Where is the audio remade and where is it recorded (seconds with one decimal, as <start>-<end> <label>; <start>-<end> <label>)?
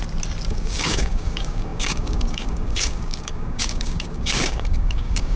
0.0-0.5 recorded; 0.5-5.4 remade